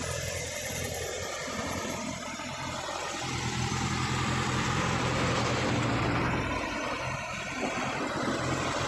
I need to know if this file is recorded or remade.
recorded